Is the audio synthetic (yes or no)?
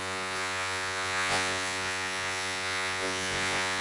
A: yes